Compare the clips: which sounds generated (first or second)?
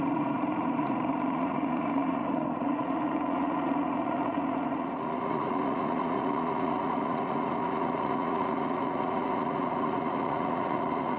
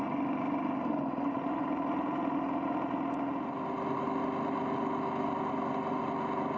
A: first